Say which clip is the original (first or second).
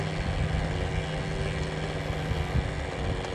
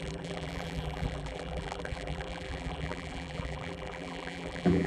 first